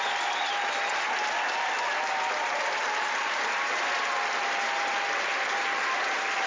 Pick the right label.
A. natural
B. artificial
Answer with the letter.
A